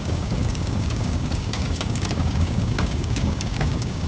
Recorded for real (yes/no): no